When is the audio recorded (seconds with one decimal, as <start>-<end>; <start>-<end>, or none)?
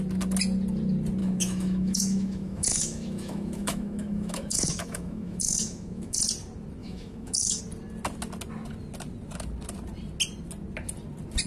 0.0-1.2; 6.2-6.8; 7.6-11.5